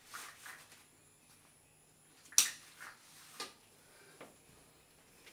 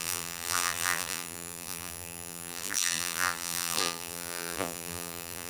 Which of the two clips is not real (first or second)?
second